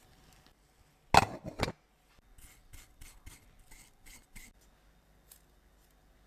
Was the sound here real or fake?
real